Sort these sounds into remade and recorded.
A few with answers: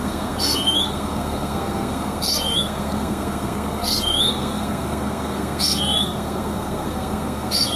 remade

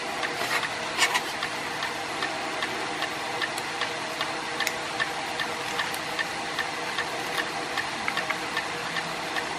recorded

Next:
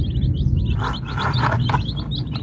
recorded